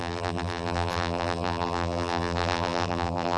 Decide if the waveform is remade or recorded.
remade